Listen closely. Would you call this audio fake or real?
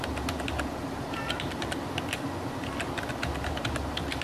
real